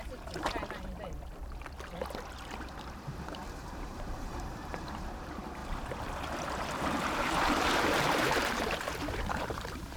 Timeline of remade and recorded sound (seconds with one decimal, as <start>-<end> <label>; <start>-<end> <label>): 0.0-1.4 remade; 1.4-2.5 recorded; 2.5-5.6 remade; 5.6-6.2 recorded; 6.2-10.0 remade

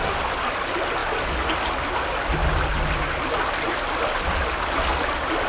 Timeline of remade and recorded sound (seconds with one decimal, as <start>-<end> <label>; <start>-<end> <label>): 0.0-5.5 recorded

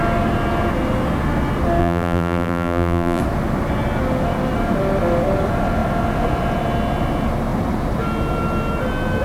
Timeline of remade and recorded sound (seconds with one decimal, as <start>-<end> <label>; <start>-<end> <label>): 0.0-1.8 recorded; 1.8-3.2 remade; 3.2-9.2 recorded

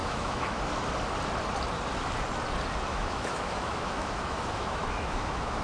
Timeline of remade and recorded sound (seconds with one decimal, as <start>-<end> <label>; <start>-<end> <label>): 0.0-0.6 remade; 0.6-2.9 recorded; 2.9-5.6 remade

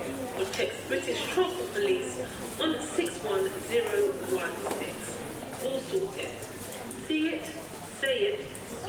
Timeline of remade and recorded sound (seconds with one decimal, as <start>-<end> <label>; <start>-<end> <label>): 0.0-2.3 recorded; 2.3-3.1 remade; 3.1-3.9 recorded; 3.9-5.1 remade; 5.1-5.7 recorded; 5.7-6.5 remade; 6.5-8.9 recorded

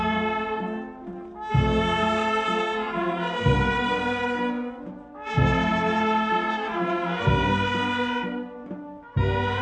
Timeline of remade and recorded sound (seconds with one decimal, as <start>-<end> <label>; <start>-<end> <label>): 0.0-9.6 recorded